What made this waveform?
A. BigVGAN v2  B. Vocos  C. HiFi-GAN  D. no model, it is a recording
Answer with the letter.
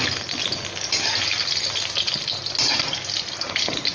D